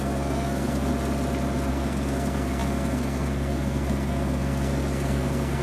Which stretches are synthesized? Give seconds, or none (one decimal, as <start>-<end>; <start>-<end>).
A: 0.0-0.9; 1.7-5.6